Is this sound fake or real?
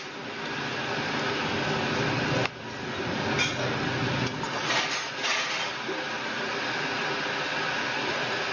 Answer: real